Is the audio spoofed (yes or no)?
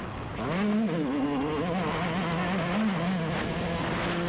no